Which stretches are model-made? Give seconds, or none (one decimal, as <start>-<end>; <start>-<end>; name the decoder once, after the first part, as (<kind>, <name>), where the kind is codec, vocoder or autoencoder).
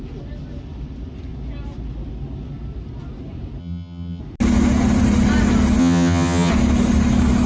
3.6-4.2 (vocoder, HiFi-GAN); 5.8-6.5